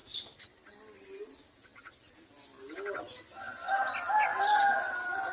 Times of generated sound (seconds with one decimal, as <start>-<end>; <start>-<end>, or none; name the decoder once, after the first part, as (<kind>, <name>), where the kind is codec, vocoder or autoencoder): none